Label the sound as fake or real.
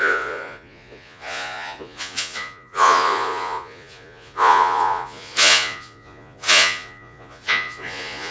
fake